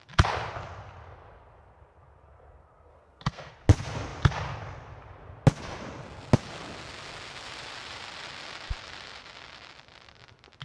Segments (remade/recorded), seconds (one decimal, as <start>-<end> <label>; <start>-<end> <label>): 0.0-2.9 recorded; 2.9-3.5 remade; 3.5-10.6 recorded